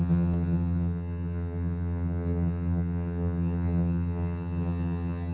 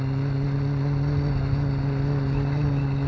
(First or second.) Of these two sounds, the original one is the second